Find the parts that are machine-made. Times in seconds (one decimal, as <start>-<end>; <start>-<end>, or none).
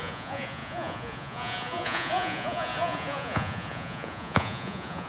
0.0-5.1